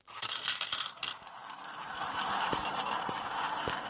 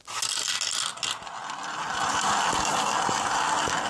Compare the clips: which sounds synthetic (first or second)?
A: first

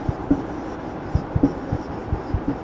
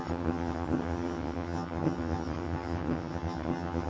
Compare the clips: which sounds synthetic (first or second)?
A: second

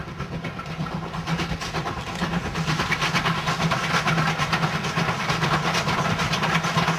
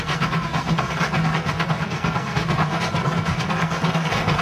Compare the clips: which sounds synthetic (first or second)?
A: second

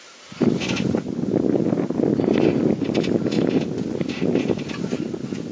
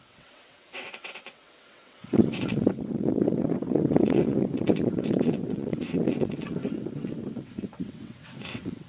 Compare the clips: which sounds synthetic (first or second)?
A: second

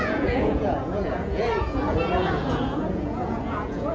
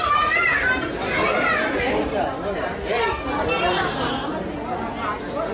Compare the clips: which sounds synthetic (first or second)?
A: first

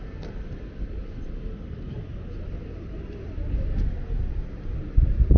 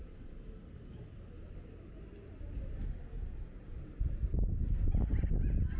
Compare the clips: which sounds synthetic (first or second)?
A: first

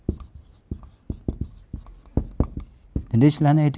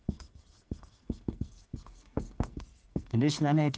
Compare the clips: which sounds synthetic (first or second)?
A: second